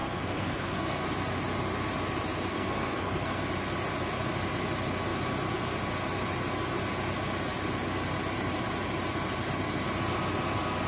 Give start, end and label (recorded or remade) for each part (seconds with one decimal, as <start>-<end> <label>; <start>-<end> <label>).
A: 0.0-1.0 remade; 1.0-2.5 recorded; 2.5-3.4 remade; 3.4-10.9 recorded